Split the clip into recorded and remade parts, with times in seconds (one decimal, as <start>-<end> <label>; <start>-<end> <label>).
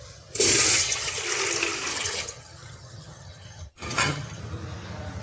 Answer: 0.0-0.5 recorded; 0.5-1.2 remade; 1.2-1.9 recorded; 1.9-4.4 remade; 4.4-5.2 recorded